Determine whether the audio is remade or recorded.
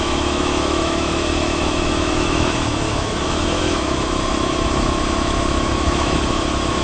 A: remade